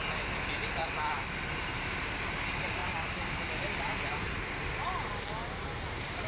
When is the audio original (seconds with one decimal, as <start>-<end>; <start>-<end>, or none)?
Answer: 0.0-0.8; 1.8-2.8; 5.2-6.3